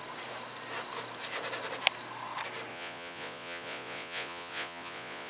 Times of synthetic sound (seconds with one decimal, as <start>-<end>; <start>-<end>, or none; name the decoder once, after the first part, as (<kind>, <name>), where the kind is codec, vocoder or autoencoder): 2.7-5.3 (vocoder, Vocos)